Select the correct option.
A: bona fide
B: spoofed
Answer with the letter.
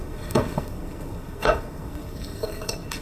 B